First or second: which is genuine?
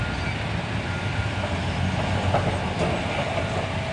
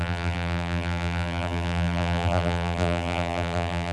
first